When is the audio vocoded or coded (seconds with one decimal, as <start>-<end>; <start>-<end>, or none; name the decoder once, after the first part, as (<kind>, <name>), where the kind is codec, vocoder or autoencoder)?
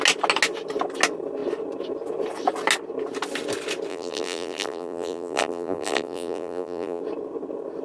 3.9-7.0 (vocoder, BigVGAN v2)